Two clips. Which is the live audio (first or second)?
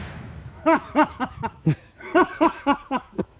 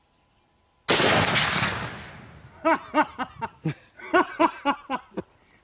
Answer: second